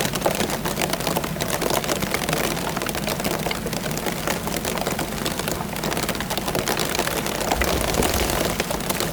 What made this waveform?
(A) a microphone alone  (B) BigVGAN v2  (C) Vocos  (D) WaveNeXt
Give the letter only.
A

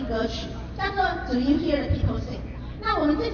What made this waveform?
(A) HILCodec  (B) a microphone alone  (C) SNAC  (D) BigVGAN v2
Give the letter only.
D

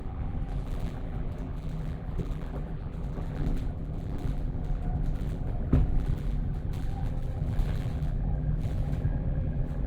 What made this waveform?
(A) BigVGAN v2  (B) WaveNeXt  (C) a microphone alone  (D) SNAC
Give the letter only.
A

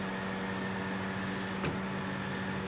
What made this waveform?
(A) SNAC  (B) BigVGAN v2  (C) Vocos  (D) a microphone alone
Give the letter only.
D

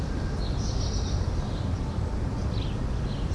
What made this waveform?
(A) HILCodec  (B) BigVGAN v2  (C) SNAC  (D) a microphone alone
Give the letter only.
D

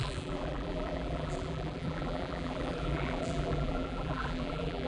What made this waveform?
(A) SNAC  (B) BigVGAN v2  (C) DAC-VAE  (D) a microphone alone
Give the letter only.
B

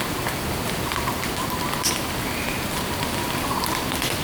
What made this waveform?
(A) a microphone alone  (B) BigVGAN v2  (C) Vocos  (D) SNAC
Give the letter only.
A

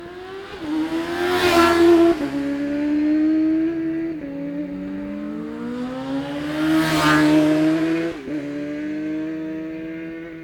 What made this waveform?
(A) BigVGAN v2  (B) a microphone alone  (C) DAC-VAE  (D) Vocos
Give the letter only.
B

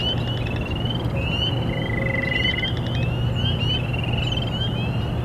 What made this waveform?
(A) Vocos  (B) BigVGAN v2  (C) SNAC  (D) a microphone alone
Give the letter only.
D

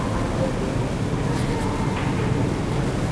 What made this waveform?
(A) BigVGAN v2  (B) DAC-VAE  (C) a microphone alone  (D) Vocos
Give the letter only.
C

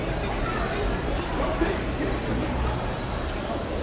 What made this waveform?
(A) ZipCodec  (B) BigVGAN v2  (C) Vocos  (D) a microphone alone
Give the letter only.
B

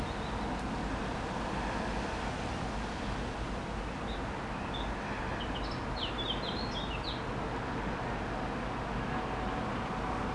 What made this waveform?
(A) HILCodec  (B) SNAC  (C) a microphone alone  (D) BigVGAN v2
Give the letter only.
C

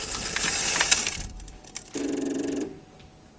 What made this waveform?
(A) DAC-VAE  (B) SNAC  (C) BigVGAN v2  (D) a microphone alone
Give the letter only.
C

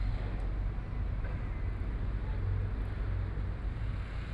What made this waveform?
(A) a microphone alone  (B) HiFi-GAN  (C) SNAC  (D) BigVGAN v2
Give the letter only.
A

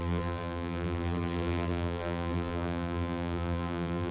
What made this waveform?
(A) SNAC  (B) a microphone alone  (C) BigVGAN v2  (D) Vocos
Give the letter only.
C